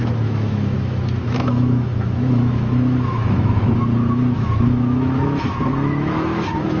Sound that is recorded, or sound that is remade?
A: remade